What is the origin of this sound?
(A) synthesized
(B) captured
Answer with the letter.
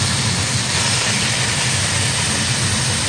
B